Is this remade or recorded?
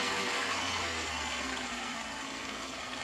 remade